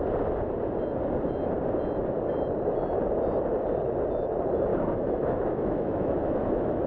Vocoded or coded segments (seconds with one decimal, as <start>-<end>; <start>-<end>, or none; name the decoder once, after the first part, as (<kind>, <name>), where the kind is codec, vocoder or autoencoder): 4.7-6.9 (autoencoder, DAC-VAE)